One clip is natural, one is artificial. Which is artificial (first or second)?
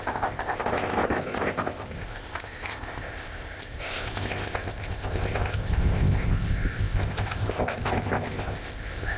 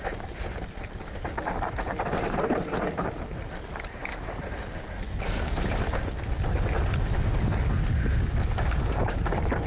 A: first